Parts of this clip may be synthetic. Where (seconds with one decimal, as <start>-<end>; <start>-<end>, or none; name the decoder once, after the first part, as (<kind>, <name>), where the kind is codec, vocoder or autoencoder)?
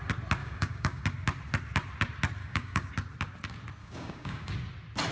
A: 0.4-1.0 (codec, DAC); 2.4-2.9; 3.8-4.5